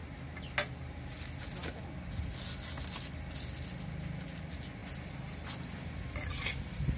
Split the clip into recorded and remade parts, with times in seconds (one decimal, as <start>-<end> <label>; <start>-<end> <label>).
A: 0.0-7.0 recorded